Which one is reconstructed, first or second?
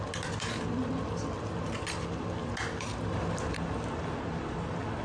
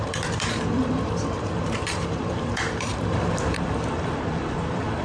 second